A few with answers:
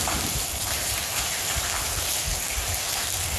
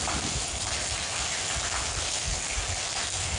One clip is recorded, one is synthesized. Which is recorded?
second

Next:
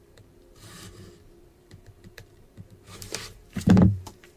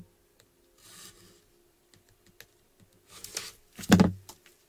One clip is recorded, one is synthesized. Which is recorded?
second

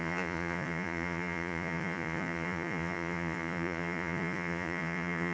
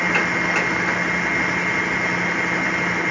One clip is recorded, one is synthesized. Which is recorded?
second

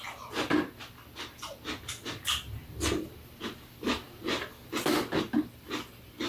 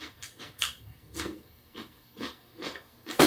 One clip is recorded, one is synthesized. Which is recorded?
first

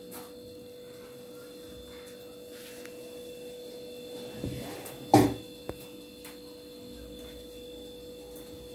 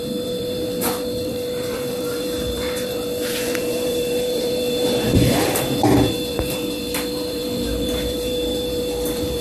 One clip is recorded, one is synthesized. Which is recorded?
first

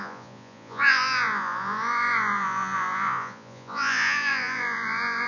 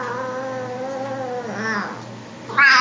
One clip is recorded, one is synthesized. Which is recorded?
second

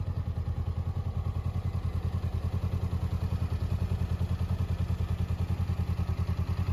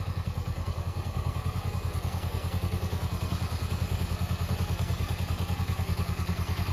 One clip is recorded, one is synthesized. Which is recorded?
first